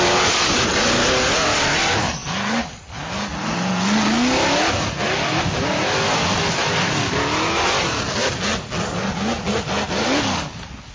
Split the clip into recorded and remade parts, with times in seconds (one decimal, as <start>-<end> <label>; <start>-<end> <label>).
0.0-10.9 recorded